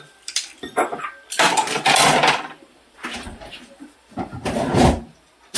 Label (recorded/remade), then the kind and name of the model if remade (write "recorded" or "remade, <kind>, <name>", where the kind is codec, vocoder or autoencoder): recorded